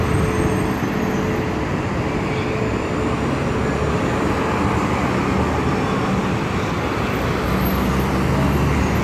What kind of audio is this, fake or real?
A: real